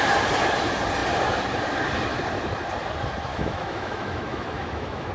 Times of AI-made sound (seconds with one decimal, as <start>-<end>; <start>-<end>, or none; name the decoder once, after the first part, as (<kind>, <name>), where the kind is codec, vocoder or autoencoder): 3.3-5.1 (autoencoder, DAC-VAE)